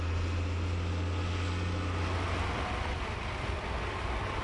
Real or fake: real